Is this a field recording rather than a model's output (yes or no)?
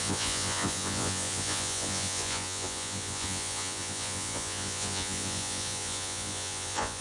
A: no